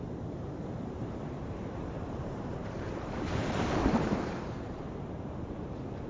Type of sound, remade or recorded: remade